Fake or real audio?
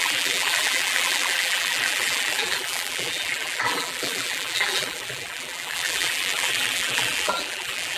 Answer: fake